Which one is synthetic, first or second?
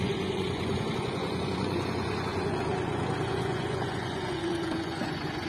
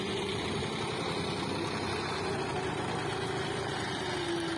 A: first